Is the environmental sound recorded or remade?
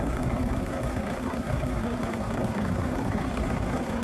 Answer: remade